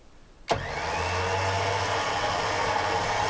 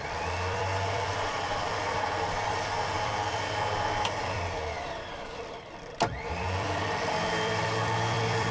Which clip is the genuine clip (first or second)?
first